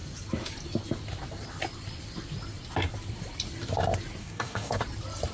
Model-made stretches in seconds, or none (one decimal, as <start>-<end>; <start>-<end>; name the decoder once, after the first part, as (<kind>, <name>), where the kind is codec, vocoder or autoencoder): 4.2-4.8 (codec, DAC)